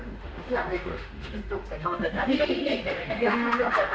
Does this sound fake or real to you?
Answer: fake